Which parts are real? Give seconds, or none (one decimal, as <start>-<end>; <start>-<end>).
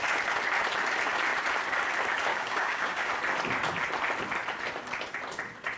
0.0-2.3; 3.1-5.8